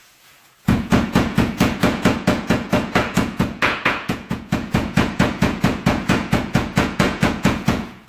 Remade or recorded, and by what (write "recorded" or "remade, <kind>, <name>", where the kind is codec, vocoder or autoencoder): remade, vocoder, Vocos